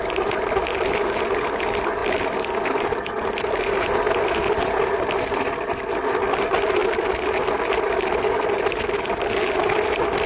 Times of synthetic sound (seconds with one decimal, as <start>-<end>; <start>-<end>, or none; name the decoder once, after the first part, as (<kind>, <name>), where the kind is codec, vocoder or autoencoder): none